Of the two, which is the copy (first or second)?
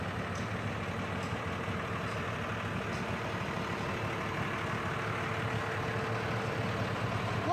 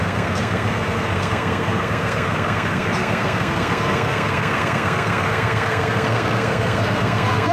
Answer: second